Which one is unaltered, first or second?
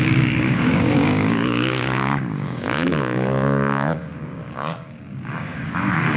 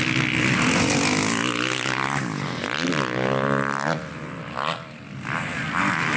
second